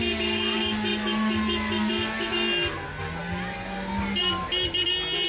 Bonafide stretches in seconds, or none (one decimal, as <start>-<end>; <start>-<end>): 0.0-5.3